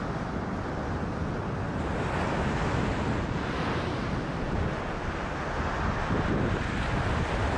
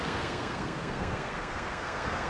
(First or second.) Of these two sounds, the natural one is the first